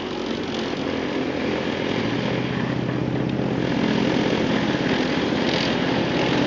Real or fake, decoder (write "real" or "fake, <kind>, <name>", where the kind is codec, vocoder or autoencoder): real